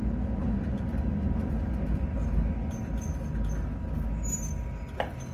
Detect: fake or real real